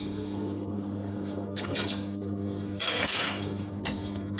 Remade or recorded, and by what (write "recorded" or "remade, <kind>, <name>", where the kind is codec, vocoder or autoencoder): remade, codec, SNAC